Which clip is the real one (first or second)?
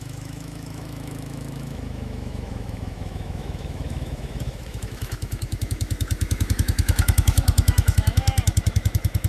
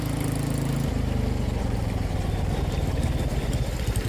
second